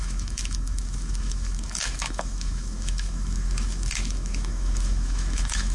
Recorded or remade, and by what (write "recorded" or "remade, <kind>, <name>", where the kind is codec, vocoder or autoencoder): remade, autoencoder, DAC-VAE